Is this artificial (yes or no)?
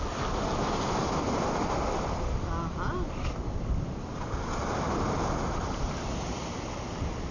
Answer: no